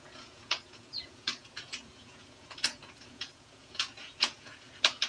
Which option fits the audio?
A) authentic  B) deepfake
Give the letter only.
B